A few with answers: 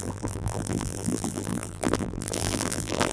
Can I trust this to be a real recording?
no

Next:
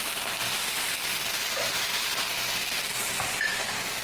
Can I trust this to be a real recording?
yes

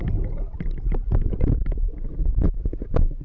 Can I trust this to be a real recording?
yes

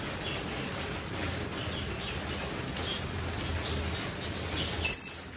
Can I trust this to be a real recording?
yes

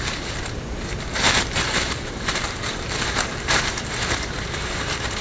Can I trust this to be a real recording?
no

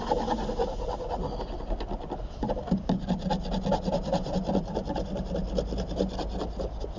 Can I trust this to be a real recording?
yes